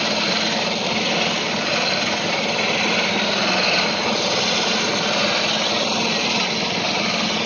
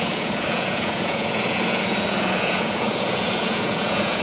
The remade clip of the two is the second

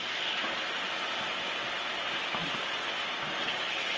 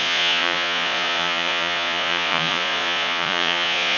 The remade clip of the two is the second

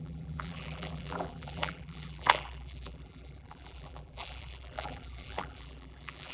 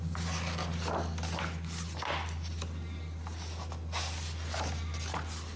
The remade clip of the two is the first